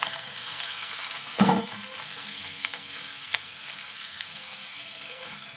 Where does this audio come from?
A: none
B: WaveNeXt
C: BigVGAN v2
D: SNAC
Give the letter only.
D